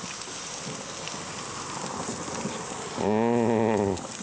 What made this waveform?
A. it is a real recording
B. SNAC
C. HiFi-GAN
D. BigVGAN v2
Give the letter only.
A